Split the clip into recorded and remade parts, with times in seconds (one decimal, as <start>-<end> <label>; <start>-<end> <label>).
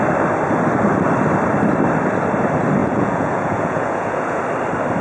0.0-2.8 recorded; 2.8-4.4 remade; 4.4-5.0 recorded